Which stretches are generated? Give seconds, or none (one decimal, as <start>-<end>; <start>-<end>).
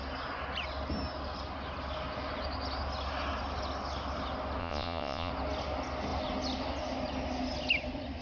4.6-5.3